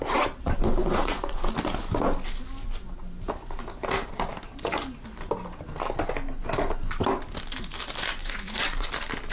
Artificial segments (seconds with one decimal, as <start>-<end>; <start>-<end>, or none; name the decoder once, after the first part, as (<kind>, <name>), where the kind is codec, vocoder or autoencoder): 0.4-1.5 (vocoder, Vocos); 8.2-8.9